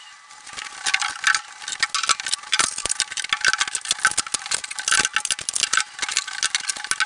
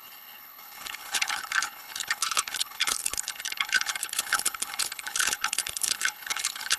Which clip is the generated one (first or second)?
second